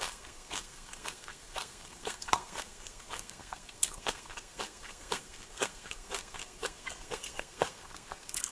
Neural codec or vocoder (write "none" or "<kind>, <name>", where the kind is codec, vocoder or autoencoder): codec, SNAC